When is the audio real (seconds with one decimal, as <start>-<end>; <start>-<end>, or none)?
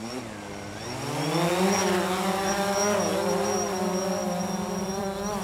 0.0-5.4